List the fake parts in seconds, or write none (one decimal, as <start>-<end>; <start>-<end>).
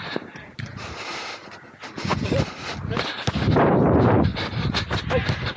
none